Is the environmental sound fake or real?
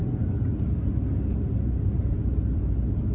real